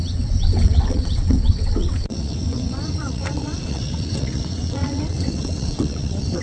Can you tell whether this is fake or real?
fake